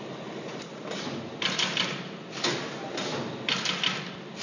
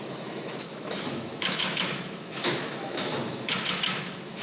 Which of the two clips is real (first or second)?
first